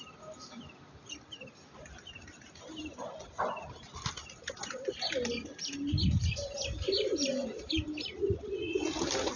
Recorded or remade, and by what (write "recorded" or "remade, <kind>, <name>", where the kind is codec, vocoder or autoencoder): recorded